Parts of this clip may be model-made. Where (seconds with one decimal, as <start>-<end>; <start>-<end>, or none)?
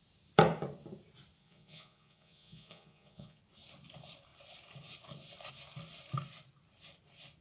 1.4-3.4